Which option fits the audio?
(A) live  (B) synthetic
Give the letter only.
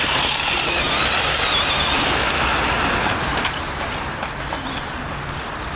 A